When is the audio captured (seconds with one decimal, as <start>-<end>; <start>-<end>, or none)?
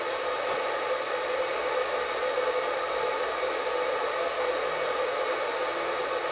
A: 0.0-6.3